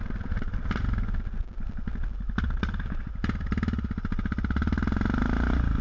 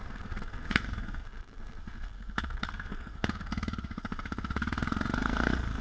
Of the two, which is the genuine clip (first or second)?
first